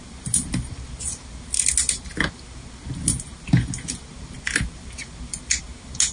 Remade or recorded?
recorded